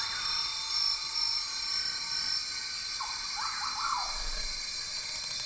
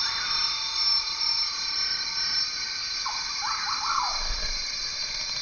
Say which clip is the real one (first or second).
first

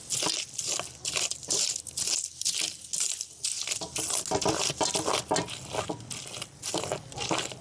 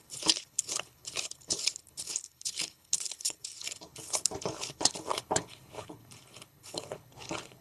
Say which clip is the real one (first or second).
first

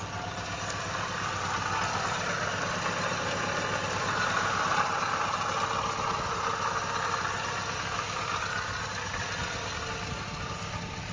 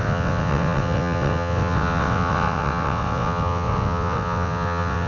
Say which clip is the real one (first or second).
first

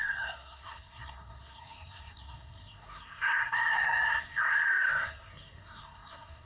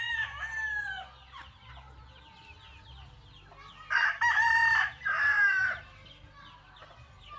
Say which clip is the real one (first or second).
second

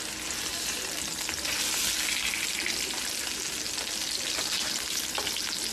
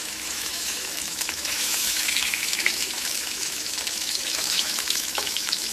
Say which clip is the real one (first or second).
first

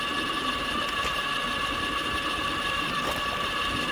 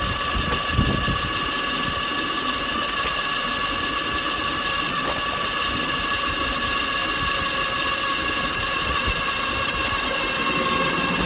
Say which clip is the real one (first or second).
second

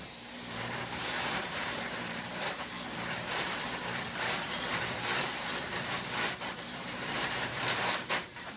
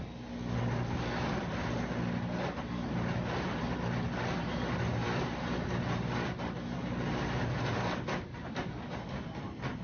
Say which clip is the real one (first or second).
second